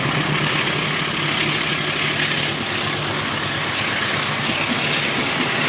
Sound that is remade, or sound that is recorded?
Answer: recorded